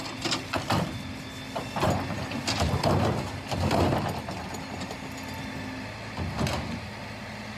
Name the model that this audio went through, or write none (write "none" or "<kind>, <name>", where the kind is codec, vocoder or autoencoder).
none